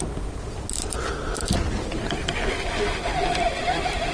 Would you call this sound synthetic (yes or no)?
no